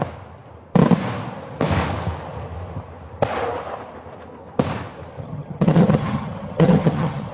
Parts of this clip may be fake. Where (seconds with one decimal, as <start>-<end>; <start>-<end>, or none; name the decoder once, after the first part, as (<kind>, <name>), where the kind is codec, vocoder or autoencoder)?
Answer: 5.2-7.3 (vocoder, HiFi-GAN)